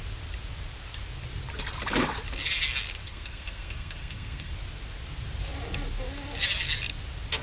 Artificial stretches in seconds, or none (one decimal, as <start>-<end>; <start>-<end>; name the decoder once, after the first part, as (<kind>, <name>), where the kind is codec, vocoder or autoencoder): 3.0-4.5 (codec, SNAC)